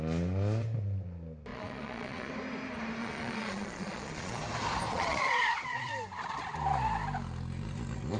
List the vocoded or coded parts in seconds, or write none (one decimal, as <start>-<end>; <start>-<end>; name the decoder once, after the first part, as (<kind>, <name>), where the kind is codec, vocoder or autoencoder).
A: 1.5-2.3 (vocoder, Vocos); 3.0-4.4; 4.9-5.9